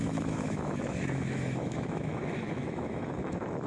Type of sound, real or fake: fake